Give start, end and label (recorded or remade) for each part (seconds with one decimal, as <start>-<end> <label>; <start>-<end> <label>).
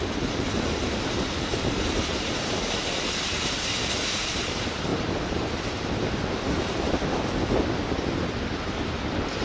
0.0-4.9 recorded; 4.9-7.5 remade; 7.5-9.4 recorded